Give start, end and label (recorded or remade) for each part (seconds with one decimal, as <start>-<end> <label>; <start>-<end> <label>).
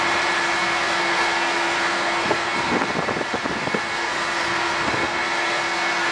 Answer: 0.0-0.6 recorded; 0.6-2.8 remade; 2.8-3.6 recorded; 3.6-6.1 remade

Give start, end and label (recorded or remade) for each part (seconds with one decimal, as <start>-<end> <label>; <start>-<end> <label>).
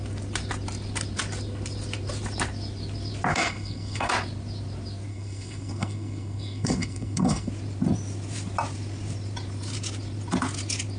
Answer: 0.0-3.3 recorded; 3.3-4.1 remade; 4.1-5.1 recorded; 5.1-7.5 remade; 7.5-11.0 recorded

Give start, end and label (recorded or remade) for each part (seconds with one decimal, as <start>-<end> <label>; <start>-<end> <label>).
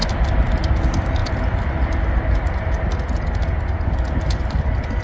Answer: 0.0-5.0 recorded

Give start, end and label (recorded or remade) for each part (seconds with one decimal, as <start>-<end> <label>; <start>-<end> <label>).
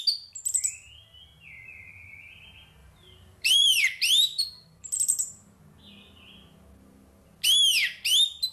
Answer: 0.0-2.8 recorded; 2.8-5.6 remade; 5.6-8.5 recorded